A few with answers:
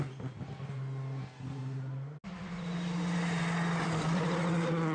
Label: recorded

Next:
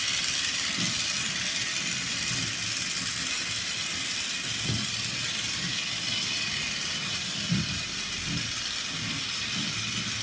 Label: recorded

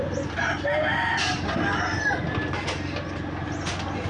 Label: recorded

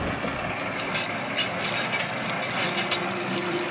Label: recorded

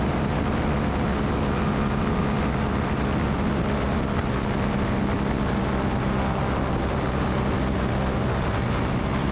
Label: recorded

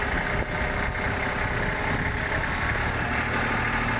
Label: recorded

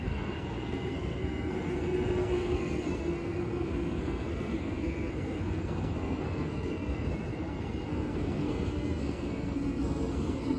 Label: remade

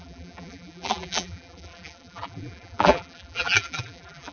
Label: remade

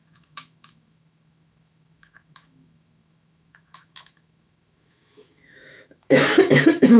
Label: remade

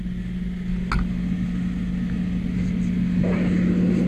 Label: recorded